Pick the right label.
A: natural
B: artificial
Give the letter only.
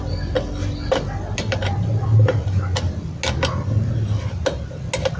A